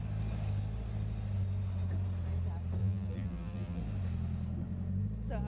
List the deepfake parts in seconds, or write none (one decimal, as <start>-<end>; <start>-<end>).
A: 2.8-3.8